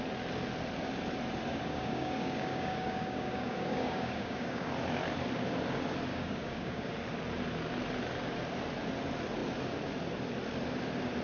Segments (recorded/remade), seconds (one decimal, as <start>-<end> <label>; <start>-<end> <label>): 0.0-1.5 recorded; 1.5-4.7 remade; 4.7-6.1 recorded; 6.1-6.9 remade; 6.9-11.2 recorded